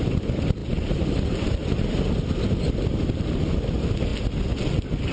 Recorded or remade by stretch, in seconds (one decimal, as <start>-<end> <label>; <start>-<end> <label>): 0.0-5.1 recorded